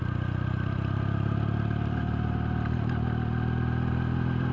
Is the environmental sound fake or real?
real